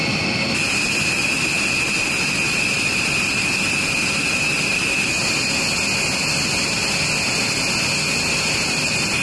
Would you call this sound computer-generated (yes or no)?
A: no